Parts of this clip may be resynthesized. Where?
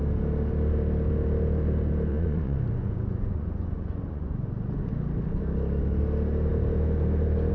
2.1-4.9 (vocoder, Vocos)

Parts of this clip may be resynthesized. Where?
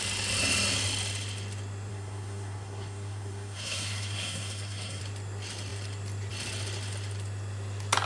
1.9-5.0 (codec, SNAC)